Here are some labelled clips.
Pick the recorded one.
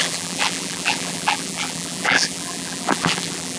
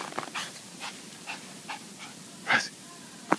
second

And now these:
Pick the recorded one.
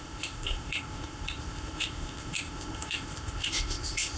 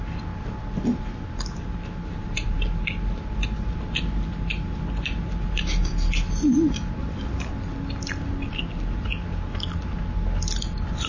second